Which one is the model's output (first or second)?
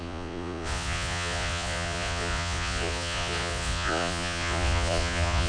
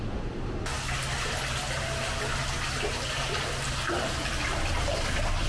first